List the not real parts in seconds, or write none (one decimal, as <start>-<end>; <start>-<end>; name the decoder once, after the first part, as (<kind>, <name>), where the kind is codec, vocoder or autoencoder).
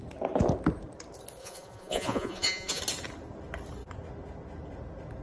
1.4-2.8 (vocoder, Vocos)